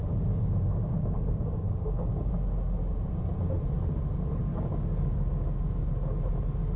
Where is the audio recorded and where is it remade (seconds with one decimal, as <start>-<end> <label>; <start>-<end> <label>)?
0.0-2.3 remade; 2.3-4.5 recorded; 4.5-5.8 remade; 5.8-6.8 recorded